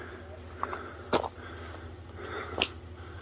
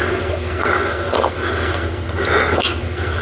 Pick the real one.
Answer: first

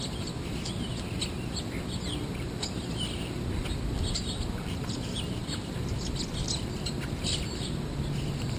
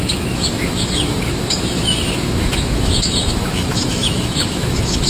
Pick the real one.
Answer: first